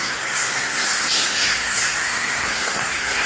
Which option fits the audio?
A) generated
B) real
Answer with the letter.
A